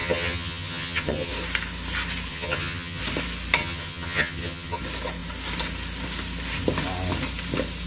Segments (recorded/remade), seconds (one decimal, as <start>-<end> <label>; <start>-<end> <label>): 0.0-1.3 remade; 1.3-2.3 recorded; 2.3-3.0 remade; 3.0-3.6 recorded; 3.6-4.8 remade; 4.8-7.9 recorded